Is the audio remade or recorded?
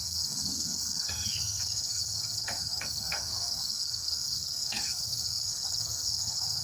remade